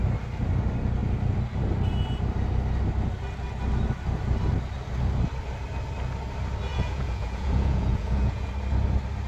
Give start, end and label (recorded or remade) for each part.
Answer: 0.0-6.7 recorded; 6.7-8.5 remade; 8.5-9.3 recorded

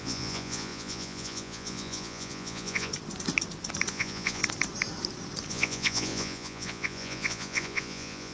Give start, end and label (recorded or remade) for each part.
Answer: 0.0-2.9 remade; 2.9-3.9 recorded; 3.9-4.4 remade; 4.4-5.5 recorded; 5.5-8.3 remade

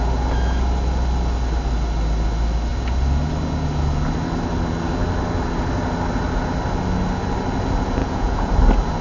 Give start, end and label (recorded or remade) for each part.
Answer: 0.0-8.0 recorded; 8.0-8.5 remade; 8.5-9.0 recorded

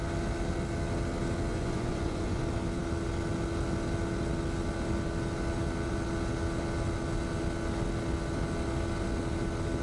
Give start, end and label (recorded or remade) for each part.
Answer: 0.0-1.5 recorded; 1.5-2.4 remade; 2.4-9.8 recorded